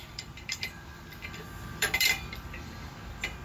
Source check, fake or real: fake